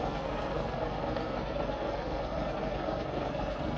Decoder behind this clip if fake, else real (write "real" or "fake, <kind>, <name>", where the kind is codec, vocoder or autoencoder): fake, codec, SNAC